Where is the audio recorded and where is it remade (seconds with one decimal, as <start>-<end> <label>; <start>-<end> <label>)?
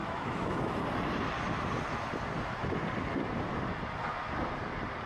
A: 0.0-0.8 remade; 0.8-5.1 recorded